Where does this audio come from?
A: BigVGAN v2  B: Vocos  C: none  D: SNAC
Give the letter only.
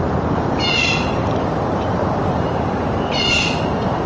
A